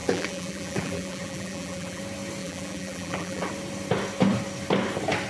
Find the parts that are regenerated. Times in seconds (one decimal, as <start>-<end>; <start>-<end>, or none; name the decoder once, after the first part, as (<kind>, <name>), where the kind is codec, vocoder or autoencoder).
0.0-2.0 (vocoder, BigVGAN v2); 2.4-3.5